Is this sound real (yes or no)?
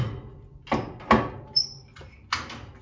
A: yes